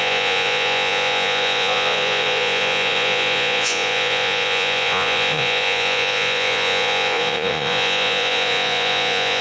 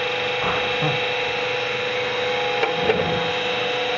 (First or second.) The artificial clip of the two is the first